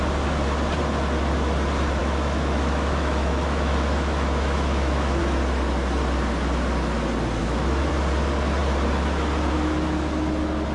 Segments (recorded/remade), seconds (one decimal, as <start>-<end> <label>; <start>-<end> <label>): 0.0-2.0 recorded; 2.0-5.2 remade; 5.2-7.4 recorded; 7.4-7.9 remade; 7.9-10.7 recorded